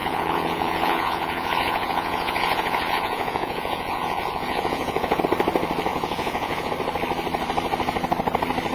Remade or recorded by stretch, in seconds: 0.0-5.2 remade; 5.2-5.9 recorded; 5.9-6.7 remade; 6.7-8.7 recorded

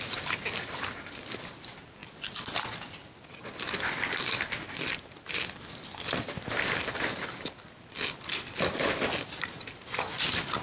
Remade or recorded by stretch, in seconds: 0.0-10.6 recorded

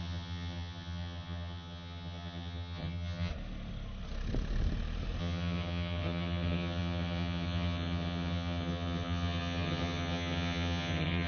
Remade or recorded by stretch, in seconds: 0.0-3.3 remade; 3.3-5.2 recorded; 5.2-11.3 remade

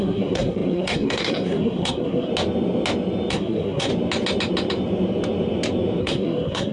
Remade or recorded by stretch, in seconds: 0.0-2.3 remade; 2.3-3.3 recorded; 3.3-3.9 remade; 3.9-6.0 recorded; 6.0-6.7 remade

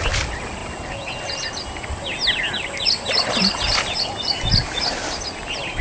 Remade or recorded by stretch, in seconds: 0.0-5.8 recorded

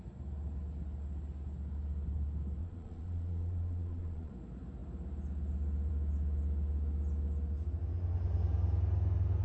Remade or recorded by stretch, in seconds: 0.0-2.6 recorded; 2.6-4.3 remade; 4.3-9.4 recorded